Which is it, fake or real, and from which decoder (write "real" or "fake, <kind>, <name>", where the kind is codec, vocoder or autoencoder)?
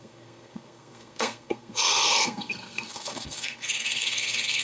fake, codec, SNAC